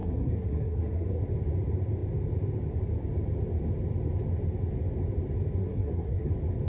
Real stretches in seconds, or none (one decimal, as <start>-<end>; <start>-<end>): 1.2-5.6; 6.3-6.7